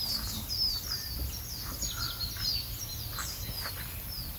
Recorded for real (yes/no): no